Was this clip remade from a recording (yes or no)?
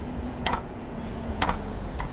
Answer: yes